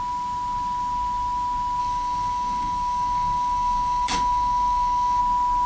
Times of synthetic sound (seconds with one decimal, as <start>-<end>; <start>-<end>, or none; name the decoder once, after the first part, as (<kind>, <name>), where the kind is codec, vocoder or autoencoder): 1.8-5.2 (codec, DAC)